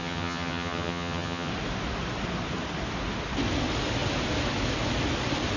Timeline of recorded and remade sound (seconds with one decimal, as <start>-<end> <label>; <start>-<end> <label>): 0.0-1.5 remade; 1.5-5.6 recorded